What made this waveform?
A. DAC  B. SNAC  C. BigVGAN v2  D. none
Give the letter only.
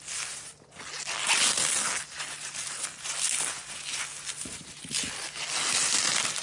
D